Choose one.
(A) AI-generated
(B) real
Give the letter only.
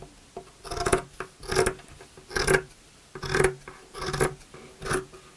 B